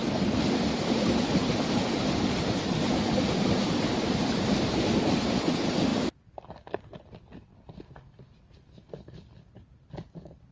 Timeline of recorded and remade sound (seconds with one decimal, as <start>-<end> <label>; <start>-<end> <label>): 0.0-10.5 recorded